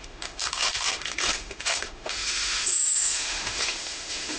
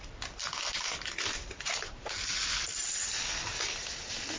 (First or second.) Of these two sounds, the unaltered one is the second